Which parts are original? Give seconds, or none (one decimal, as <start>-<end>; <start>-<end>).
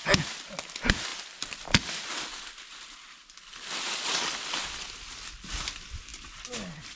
0.0-7.0